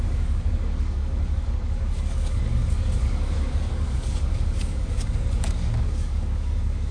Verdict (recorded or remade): remade